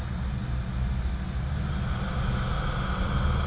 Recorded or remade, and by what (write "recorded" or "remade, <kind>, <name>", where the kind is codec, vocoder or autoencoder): recorded